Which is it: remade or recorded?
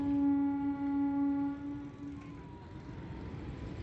recorded